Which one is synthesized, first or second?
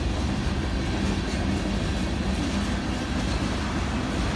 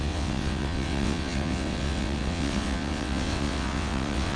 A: second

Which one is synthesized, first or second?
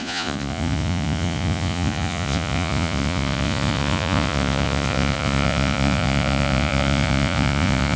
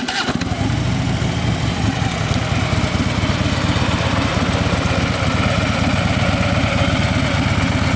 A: first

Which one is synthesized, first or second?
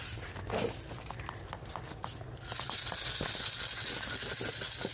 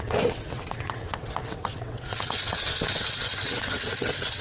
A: second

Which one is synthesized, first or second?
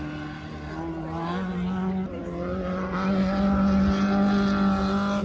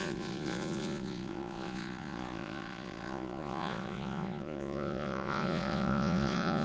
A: second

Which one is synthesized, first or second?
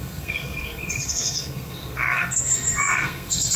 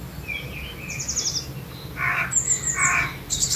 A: first